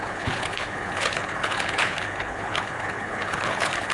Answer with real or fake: fake